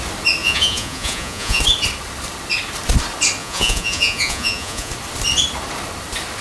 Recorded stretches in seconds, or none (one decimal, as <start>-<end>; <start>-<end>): 0.0-0.4; 1.6-3.4; 4.9-6.4